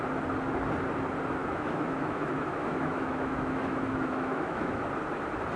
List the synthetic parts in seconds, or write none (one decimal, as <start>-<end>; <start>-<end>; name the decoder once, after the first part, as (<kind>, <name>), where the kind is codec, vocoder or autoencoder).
1.4-4.8 (autoencoder, DAC-VAE)